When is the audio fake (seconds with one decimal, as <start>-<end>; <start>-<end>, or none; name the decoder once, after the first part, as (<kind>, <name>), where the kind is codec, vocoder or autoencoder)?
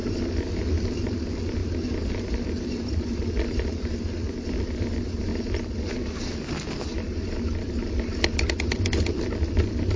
none